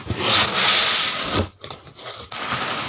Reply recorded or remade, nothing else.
recorded